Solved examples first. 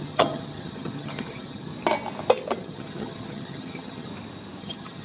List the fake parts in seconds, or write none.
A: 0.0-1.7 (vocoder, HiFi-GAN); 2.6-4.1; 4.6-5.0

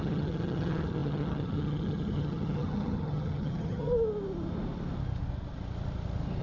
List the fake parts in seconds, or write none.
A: 0.0-3.9 (vocoder, HiFi-GAN)

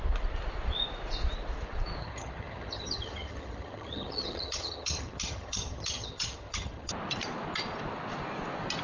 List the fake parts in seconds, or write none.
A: 2.0-6.9 (vocoder, HiFi-GAN)

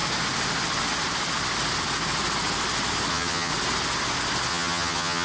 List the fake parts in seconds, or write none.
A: 3.1-3.5 (vocoder, HiFi-GAN); 4.5-5.2

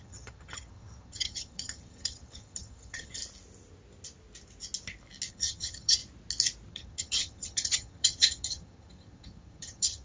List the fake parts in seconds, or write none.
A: 0.0-3.2 (vocoder, HiFi-GAN); 5.3-6.0; 6.7-10.0

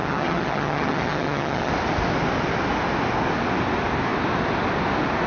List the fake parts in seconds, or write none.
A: 0.0-1.7 (vocoder, HiFi-GAN)

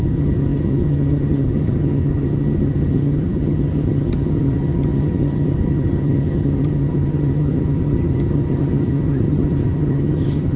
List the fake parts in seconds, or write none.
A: 0.0-10.6 (vocoder, HiFi-GAN)

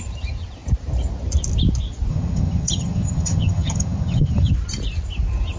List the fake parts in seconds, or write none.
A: 2.1-4.5 (vocoder, HiFi-GAN)